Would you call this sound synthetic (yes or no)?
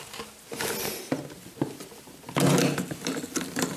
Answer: no